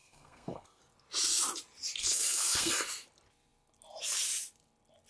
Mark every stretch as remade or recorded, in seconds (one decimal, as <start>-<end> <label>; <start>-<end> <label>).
0.0-0.8 remade; 0.8-2.0 recorded; 2.0-2.7 remade; 2.7-5.1 recorded